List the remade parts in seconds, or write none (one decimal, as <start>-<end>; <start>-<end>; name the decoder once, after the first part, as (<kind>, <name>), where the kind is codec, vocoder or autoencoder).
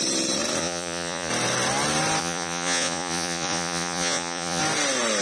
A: 0.6-1.3 (vocoder, Vocos); 2.2-4.6